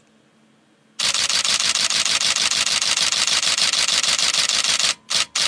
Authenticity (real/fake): real